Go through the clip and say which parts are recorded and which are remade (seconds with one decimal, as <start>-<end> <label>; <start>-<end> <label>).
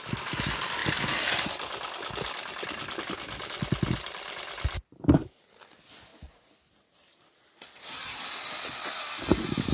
0.0-9.7 recorded